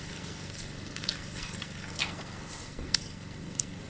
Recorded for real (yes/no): no